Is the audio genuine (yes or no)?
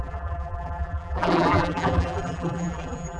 no